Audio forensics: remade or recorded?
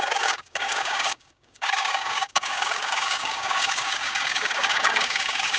remade